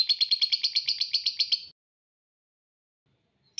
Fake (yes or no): no